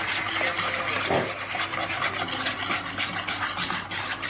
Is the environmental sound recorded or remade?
recorded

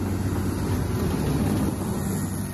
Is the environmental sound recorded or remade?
recorded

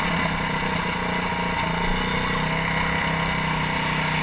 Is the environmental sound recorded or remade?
recorded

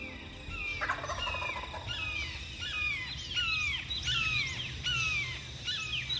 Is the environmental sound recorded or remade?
recorded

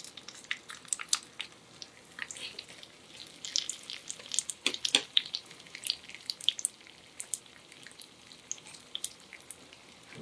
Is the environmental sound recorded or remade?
recorded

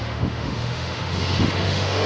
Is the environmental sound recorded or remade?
remade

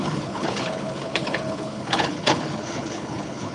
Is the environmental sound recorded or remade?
remade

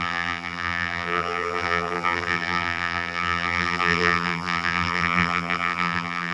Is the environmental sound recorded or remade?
remade